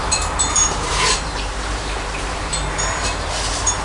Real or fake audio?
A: fake